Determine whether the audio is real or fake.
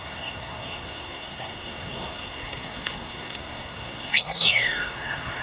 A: fake